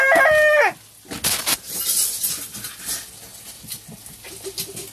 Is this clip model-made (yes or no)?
no